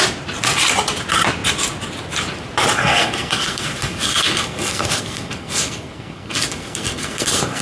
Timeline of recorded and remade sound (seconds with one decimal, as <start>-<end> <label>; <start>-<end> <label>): 0.0-2.8 recorded; 2.8-7.6 remade